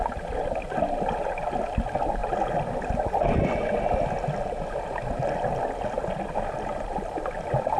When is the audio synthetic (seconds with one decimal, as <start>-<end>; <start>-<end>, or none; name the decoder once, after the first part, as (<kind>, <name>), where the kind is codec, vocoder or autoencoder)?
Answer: none